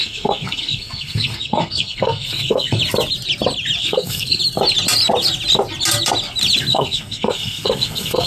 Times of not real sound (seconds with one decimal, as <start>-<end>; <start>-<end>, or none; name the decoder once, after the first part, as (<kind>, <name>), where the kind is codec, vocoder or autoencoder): 0.0-2.8 (codec, SNAC); 3.8-4.4; 6.7-8.3

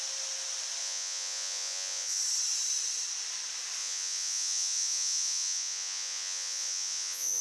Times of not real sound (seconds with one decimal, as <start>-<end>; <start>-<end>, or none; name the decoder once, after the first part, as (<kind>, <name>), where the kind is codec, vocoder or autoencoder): 0.8-2.2 (vocoder, Vocos); 3.8-7.4